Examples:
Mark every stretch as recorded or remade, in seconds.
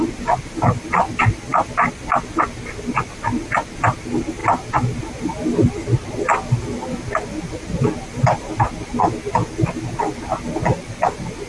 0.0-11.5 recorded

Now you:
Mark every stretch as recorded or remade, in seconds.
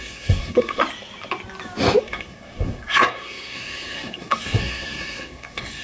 0.0-0.8 remade; 0.8-2.0 recorded; 2.0-5.8 remade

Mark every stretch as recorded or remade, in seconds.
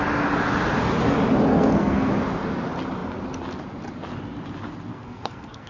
0.0-1.5 recorded; 1.5-2.1 remade; 2.1-4.9 recorded; 4.9-5.7 remade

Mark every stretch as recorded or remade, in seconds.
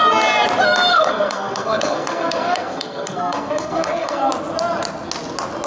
0.0-0.9 recorded; 0.9-4.3 remade; 4.3-5.7 recorded